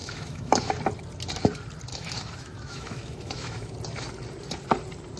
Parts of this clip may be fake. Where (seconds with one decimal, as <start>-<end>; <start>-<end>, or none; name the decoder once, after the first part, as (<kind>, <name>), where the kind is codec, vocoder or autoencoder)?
0.0-0.7 (autoencoder, DAC-VAE); 1.9-3.7